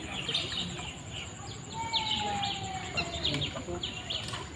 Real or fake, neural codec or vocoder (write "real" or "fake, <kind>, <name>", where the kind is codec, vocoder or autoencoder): real